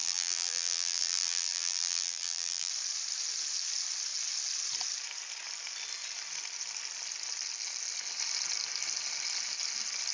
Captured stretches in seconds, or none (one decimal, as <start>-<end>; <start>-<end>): 2.7-10.1